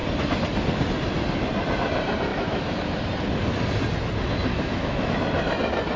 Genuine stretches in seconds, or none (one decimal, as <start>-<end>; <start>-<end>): 0.0-2.3; 3.0-4.5; 5.1-6.0